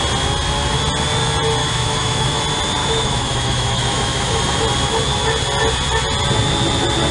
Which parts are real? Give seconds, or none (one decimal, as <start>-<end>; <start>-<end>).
0.0-1.6; 2.4-2.8; 4.4-7.1